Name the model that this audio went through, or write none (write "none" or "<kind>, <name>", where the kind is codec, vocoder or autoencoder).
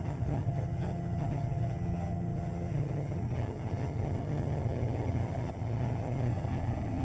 vocoder, HiFi-GAN